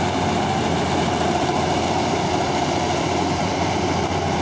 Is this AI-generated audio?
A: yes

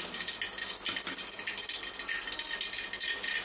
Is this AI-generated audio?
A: no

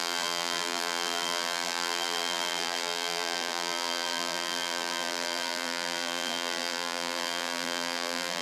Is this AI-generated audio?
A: yes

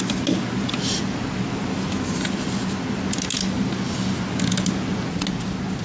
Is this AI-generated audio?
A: no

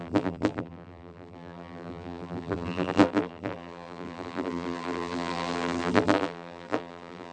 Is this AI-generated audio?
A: yes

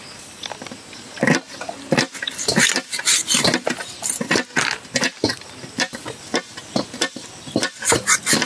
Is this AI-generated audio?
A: no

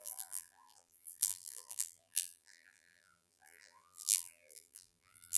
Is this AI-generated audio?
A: yes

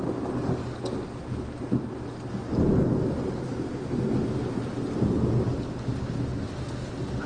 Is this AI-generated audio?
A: no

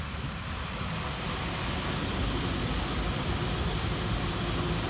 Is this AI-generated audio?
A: no